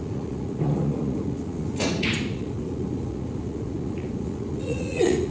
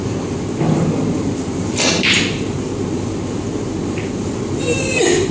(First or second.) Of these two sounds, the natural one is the second